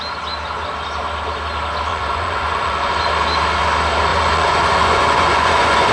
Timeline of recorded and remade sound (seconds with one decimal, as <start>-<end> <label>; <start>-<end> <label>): 0.0-1.9 recorded; 1.9-2.9 remade; 2.9-4.1 recorded; 4.1-5.9 remade